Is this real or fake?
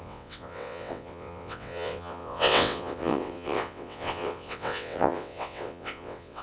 fake